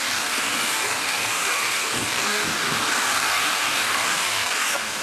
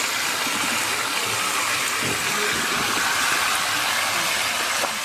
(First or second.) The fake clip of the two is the first